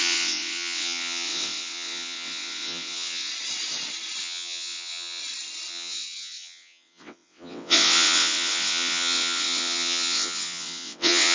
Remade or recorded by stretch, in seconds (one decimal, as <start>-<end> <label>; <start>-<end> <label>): 0.0-3.3 remade; 3.3-4.2 recorded; 4.2-5.2 remade; 5.2-5.7 recorded; 5.7-11.3 remade